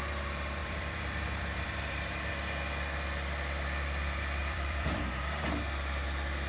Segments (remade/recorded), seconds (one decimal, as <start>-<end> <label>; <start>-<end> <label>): 0.0-0.6 recorded; 0.6-2.3 remade; 2.3-4.4 recorded; 4.4-5.0 remade; 5.0-6.5 recorded